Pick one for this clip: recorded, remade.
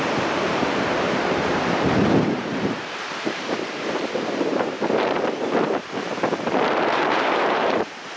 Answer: remade